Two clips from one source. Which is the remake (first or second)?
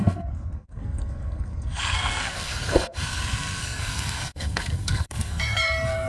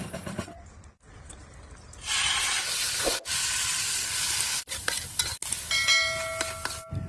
first